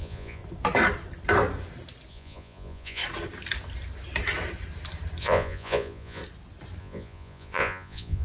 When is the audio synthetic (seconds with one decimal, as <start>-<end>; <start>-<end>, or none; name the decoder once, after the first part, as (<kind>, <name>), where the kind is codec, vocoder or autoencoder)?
0.0-0.4 (vocoder, Vocos); 2.1-3.0; 5.2-6.2; 6.8-8.2